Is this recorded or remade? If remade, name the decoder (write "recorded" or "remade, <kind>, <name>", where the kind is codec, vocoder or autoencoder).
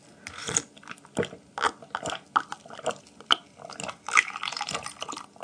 recorded